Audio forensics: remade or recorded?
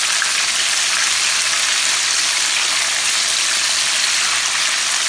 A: recorded